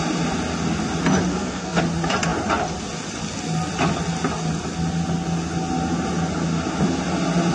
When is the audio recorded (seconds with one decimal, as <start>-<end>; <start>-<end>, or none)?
0.0-1.3; 1.8-7.5